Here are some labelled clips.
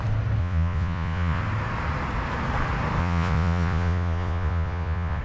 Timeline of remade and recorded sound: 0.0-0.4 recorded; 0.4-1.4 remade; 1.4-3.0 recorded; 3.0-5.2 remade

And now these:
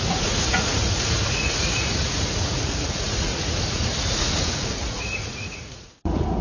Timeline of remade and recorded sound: 0.0-6.4 remade

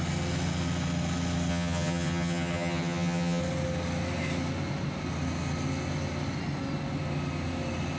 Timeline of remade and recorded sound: 0.0-1.5 recorded; 1.5-3.4 remade; 3.4-8.0 recorded

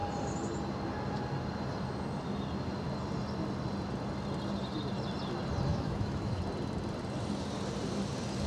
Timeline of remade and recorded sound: 0.0-5.7 recorded; 5.7-6.4 remade; 6.4-8.5 recorded

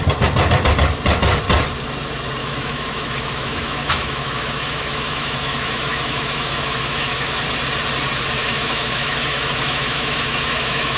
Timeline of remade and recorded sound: 0.0-2.4 recorded; 2.4-7.3 remade; 7.3-8.4 recorded; 8.4-11.0 remade

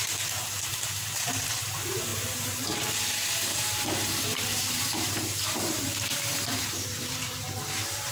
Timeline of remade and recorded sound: 0.0-8.1 remade